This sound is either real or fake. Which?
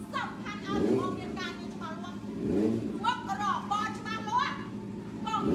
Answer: real